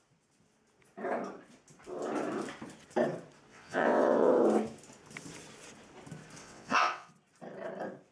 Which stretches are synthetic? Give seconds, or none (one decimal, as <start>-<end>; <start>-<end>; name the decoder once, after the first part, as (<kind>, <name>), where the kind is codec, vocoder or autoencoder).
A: 3.5-4.3 (vocoder, WaveNeXt); 6.4-7.1

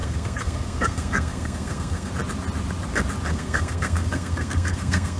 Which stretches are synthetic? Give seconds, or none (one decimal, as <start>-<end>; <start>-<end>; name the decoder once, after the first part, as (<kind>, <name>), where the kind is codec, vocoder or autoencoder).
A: 0.0-2.1 (codec, SNAC); 3.3-5.2

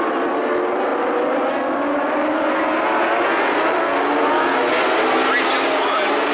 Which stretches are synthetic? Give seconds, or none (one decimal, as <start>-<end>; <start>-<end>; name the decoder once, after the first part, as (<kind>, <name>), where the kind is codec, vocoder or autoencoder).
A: none

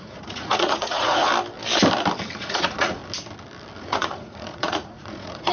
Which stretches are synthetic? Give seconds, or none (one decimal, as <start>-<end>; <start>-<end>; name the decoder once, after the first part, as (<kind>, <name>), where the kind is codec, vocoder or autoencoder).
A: 0.0-1.3 (vocoder, Vocos); 2.4-3.0; 3.8-5.5

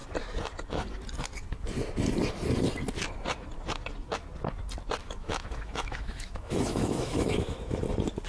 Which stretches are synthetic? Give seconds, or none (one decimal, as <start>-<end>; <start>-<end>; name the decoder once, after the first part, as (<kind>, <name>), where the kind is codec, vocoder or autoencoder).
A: 5.0-7.8 (autoencoder, DAC-VAE)

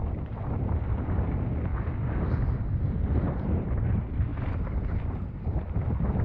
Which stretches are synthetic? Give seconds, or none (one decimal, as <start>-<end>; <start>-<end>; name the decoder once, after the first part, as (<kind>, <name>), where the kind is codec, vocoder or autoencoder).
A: 0.0-0.6 (vocoder, BigVGAN v2)

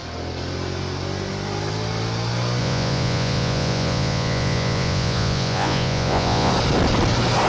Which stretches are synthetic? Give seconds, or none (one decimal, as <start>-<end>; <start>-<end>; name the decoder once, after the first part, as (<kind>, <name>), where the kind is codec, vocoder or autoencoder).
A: 2.6-6.5 (vocoder, Vocos)